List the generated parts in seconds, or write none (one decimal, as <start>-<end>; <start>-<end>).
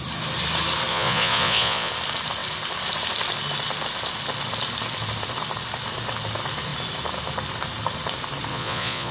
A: 0.9-1.9; 8.5-9.1